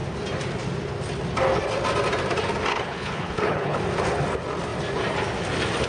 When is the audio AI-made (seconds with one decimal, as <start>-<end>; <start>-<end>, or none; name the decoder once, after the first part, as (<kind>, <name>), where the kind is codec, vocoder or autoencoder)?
2.7-3.8 (codec, HILCodec)